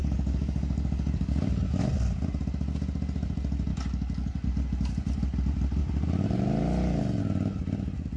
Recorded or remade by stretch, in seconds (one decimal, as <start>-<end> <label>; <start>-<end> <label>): 0.0-1.9 remade; 1.9-3.7 recorded; 3.7-4.5 remade; 4.5-8.2 recorded